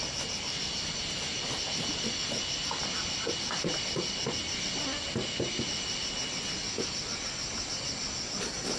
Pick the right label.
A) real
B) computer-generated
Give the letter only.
A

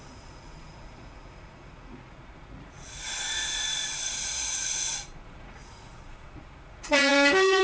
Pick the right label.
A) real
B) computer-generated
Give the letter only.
B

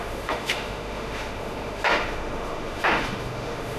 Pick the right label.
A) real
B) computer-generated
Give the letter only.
B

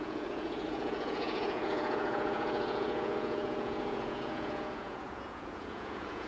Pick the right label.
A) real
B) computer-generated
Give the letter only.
B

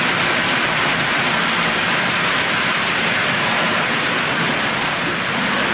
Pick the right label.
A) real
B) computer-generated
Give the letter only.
A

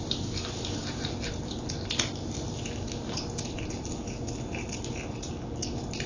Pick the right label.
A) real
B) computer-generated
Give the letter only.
A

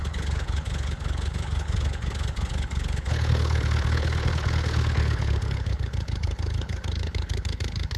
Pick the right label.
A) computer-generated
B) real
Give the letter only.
A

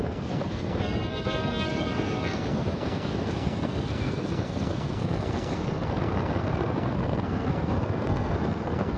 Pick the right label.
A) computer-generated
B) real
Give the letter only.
A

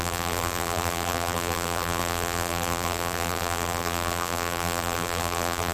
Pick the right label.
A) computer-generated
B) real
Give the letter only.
A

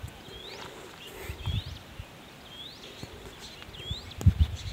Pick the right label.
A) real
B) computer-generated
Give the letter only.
A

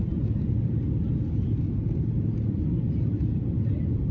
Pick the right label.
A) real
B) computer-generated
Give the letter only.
B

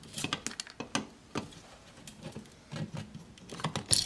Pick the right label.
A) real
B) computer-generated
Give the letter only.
A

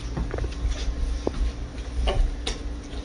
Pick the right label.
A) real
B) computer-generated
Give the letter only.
A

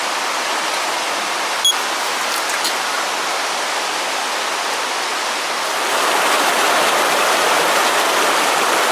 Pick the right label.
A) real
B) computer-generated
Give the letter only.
A